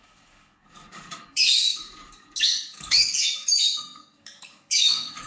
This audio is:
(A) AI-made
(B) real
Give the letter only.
A